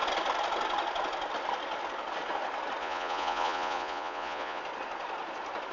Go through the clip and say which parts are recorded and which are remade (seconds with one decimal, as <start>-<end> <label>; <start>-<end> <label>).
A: 0.0-2.8 recorded; 2.8-4.6 remade; 4.6-5.7 recorded